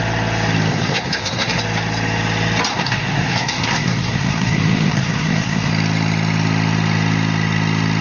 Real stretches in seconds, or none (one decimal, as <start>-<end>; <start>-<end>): 0.0-0.7; 1.6-2.7; 5.7-8.0